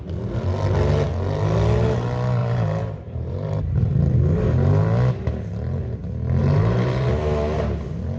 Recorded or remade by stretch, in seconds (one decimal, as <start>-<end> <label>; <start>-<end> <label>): 0.0-2.4 recorded; 2.4-3.9 remade; 3.9-6.4 recorded; 6.4-7.1 remade; 7.1-8.2 recorded